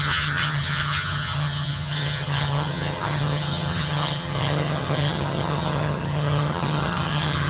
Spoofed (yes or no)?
yes